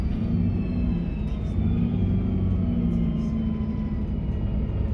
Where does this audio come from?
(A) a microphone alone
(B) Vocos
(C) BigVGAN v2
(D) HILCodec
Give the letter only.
A